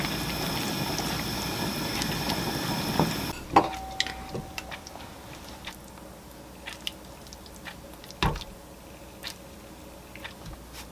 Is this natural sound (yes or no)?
yes